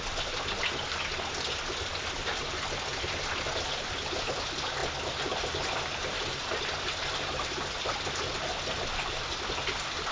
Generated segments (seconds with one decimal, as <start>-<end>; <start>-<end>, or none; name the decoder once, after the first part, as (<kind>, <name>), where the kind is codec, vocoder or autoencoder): none